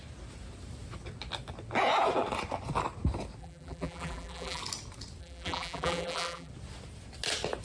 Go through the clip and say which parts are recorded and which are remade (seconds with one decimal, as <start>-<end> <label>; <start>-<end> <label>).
0.0-3.4 recorded; 3.4-4.6 remade; 4.6-5.2 recorded; 5.2-6.5 remade; 6.5-7.6 recorded